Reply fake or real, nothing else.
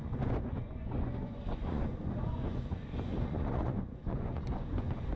fake